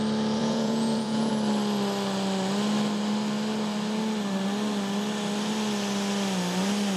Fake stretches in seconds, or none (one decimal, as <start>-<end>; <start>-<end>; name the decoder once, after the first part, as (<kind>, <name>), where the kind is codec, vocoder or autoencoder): 0.4-1.3 (vocoder, Vocos)

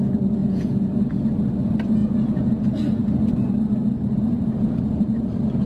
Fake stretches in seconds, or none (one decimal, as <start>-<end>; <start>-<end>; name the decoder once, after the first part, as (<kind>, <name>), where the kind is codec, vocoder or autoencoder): 0.4-1.2 (vocoder, Vocos); 2.0-3.0

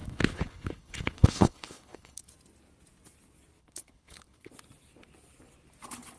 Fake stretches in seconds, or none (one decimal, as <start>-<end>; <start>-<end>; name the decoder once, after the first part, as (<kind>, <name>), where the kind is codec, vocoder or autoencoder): 0.0-2.3 (codec, HILCodec); 3.6-4.5

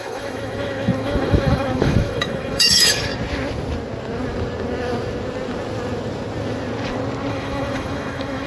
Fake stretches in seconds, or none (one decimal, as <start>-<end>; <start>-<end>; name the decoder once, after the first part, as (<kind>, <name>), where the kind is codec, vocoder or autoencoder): 0.0-3.1 (autoencoder, DAC-VAE); 7.3-8.5

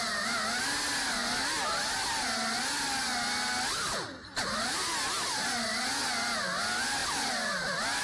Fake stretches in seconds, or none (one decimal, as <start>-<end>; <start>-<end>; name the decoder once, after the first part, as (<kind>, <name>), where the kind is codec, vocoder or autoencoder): none

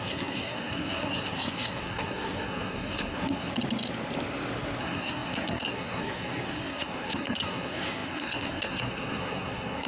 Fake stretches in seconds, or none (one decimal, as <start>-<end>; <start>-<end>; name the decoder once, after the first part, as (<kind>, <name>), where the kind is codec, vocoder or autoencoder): 0.0-3.5 (codec, SNAC); 4.8-9.9

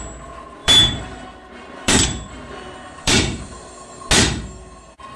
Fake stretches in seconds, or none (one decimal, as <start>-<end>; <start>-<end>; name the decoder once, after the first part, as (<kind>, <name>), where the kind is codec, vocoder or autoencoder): 0.6-3.7 (vocoder, BigVGAN v2)

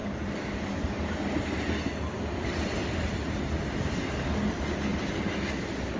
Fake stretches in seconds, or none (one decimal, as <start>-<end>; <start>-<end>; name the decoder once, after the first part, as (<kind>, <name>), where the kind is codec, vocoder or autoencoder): none